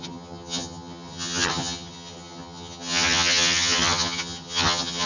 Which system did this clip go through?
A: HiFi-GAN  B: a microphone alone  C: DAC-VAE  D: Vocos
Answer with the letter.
A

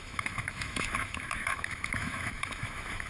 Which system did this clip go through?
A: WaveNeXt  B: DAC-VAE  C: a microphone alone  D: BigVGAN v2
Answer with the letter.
B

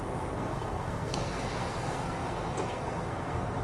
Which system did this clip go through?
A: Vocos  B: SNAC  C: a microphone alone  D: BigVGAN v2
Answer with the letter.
B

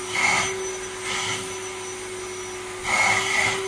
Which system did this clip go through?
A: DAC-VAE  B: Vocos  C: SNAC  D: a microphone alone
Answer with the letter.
D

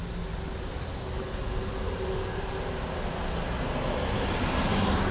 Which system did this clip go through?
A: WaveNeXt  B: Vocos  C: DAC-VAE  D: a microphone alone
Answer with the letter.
D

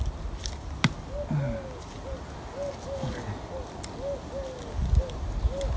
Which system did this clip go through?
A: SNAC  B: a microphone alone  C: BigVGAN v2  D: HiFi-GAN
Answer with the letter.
B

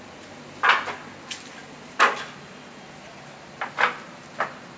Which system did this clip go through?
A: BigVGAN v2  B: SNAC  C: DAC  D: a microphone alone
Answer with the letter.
D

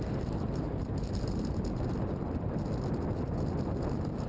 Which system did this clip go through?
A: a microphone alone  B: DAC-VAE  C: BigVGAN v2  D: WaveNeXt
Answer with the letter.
A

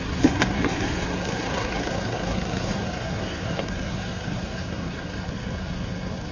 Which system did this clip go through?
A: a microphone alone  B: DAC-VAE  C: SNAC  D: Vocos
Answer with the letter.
C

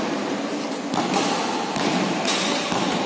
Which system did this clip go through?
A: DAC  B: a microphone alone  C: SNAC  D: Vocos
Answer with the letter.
B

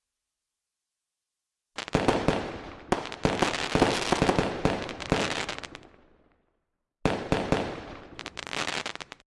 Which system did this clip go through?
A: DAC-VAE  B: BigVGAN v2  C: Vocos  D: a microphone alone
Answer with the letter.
D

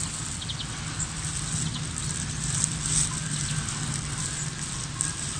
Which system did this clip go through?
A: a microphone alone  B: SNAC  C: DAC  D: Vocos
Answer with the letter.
A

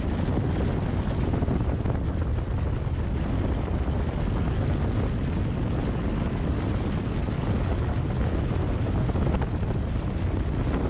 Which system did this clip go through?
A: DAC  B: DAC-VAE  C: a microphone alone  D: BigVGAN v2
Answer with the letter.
C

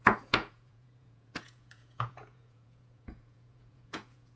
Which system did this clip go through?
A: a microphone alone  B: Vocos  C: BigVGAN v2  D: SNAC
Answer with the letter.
B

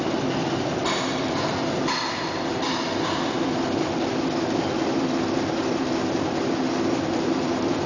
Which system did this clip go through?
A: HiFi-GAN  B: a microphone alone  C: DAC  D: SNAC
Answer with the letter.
B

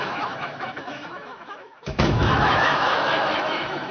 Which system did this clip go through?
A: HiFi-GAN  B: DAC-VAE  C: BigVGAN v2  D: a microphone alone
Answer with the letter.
B